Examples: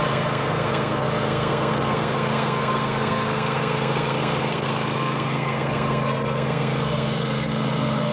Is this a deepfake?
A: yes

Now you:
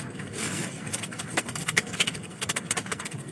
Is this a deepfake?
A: yes